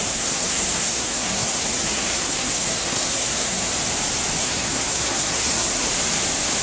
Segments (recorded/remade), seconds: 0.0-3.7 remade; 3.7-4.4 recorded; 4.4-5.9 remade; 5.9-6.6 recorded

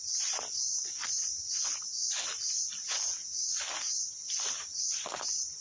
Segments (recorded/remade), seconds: 0.0-5.6 recorded

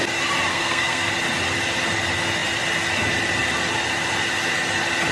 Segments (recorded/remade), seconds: 0.0-0.5 recorded; 0.5-1.1 remade; 1.1-5.1 recorded

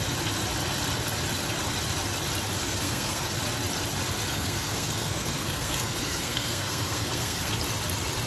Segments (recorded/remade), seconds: 0.0-2.6 recorded; 2.6-3.3 remade; 3.3-4.3 recorded; 4.3-7.5 remade; 7.5-8.3 recorded

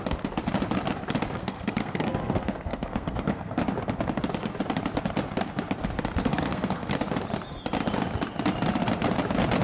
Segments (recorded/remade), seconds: 0.0-1.4 recorded; 1.4-3.6 remade; 3.6-6.2 recorded; 6.2-6.9 remade; 6.9-9.6 recorded

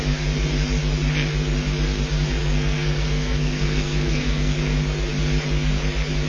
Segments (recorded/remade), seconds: 0.0-2.4 recorded; 2.4-4.6 remade; 4.6-6.3 recorded

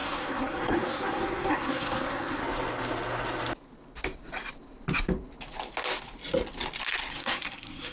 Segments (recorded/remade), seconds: 0.0-2.4 remade; 2.4-7.1 recorded; 7.1-7.9 remade

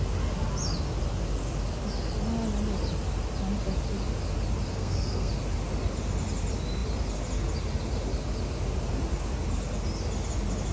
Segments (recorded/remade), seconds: 0.0-4.7 recorded; 4.7-5.3 remade; 5.3-10.7 recorded